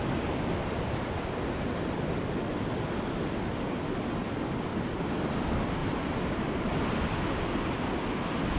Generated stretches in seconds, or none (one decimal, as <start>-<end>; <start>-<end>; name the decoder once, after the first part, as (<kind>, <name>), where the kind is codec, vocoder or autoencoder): 4.7-5.2 (vocoder, BigVGAN v2); 5.8-6.8